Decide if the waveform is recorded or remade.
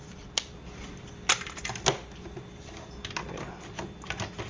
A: recorded